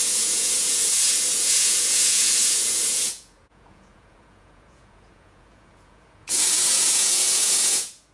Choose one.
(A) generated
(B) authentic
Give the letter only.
A